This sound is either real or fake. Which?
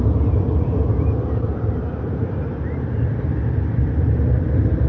fake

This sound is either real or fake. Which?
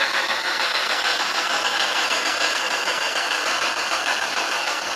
fake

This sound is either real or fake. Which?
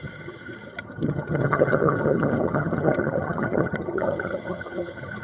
fake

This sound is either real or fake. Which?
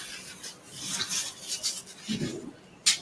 real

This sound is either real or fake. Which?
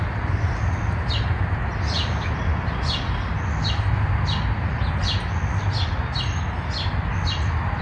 real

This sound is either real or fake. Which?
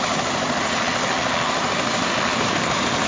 real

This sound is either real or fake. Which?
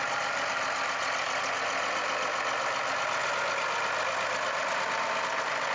real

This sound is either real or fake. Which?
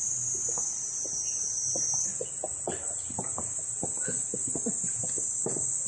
real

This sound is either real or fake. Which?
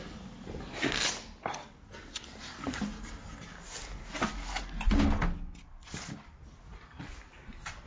real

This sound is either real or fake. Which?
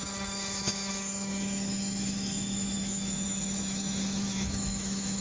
fake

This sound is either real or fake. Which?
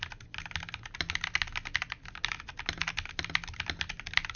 real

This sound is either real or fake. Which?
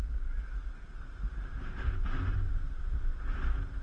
real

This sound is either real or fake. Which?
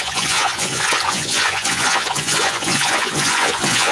fake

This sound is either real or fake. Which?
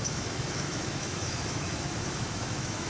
fake